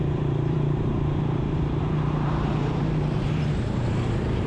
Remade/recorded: remade